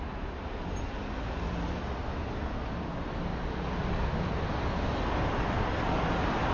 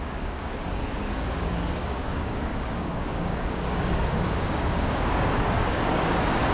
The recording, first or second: first